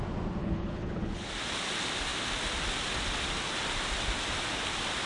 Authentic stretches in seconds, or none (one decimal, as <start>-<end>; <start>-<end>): 0.0-0.4; 1.3-5.1